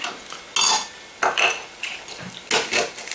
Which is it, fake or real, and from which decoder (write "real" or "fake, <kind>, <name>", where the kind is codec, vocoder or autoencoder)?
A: real